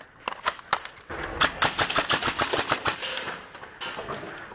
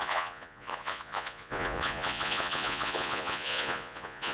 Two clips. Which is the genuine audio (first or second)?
first